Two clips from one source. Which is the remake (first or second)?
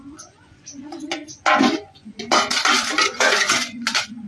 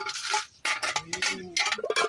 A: first